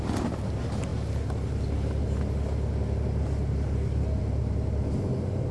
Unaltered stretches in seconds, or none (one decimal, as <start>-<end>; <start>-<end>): 0.0-5.5